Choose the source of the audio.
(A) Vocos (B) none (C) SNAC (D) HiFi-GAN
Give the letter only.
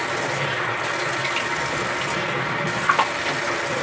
B